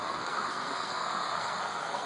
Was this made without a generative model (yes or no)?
no